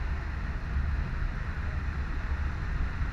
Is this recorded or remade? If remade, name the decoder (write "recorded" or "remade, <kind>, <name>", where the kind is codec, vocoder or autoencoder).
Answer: recorded